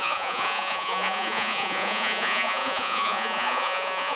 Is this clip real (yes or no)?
no